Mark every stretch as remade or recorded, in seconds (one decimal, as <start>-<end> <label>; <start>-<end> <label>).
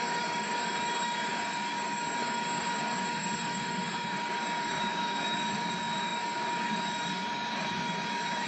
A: 0.0-8.5 remade